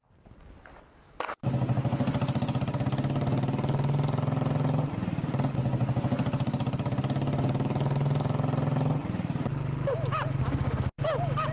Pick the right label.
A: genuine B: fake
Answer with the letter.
A